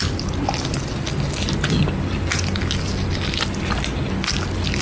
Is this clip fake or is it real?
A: real